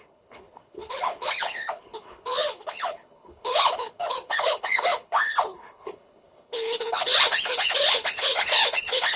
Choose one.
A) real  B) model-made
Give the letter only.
B